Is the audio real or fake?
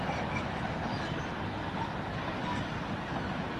real